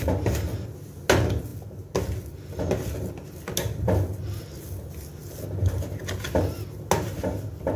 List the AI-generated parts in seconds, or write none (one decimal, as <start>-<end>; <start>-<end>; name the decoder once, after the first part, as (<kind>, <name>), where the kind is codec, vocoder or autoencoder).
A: none